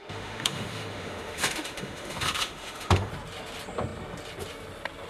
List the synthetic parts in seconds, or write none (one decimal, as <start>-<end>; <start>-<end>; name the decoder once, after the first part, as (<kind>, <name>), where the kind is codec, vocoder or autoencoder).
0.0-3.1 (autoencoder, DAC-VAE)